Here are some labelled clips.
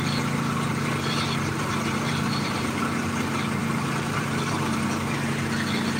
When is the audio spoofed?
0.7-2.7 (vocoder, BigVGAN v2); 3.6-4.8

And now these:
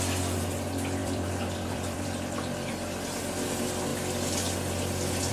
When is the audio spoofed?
1.0-2.7 (vocoder, BigVGAN v2)

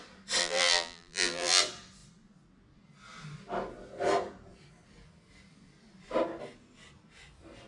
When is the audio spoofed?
0.4-1.6 (vocoder, BigVGAN v2)

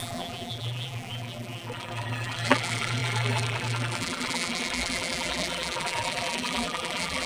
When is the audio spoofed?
0.0-7.3 (vocoder, BigVGAN v2)

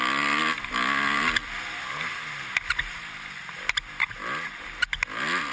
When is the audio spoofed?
none